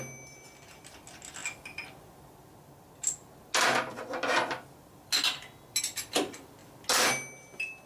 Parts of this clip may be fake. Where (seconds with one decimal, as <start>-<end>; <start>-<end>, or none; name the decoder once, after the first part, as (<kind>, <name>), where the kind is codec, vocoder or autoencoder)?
none